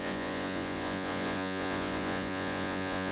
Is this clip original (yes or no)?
no